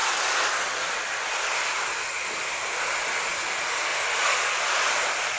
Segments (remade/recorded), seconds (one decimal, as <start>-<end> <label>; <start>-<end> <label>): 0.0-5.4 recorded